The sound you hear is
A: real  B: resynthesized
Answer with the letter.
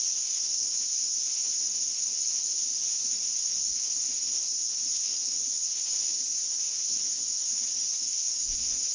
B